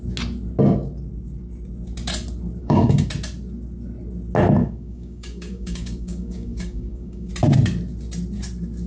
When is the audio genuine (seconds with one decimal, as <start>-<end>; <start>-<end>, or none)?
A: 0.0-2.6; 3.1-4.6; 7.3-8.9

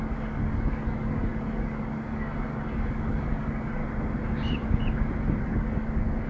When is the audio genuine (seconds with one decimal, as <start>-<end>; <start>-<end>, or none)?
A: 3.8-5.4

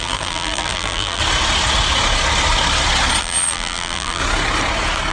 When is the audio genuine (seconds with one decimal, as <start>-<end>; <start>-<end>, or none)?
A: 1.2-3.2; 4.2-5.1

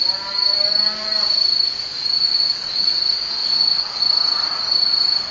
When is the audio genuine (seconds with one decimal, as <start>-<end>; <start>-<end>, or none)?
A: 0.0-2.2; 3.0-3.4; 4.0-5.3

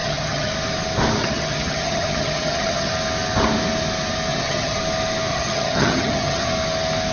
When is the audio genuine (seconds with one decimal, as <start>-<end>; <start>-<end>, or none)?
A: 0.5-1.2; 2.9-4.3; 4.8-5.3; 6.5-7.1